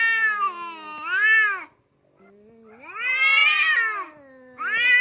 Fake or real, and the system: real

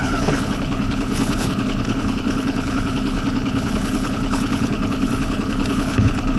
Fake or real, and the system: fake, codec, HILCodec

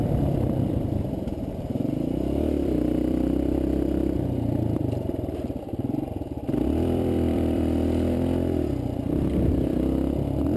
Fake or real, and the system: fake, vocoder, BigVGAN v2